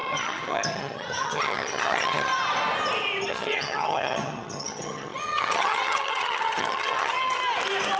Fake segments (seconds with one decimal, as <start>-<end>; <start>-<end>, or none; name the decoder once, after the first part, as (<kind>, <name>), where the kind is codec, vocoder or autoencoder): 0.0-2.3 (vocoder, HiFi-GAN); 3.3-7.4